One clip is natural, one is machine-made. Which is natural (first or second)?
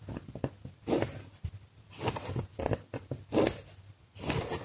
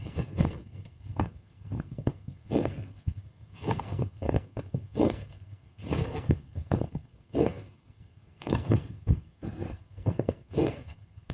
first